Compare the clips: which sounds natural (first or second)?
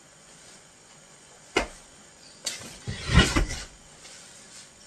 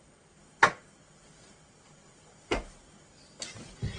second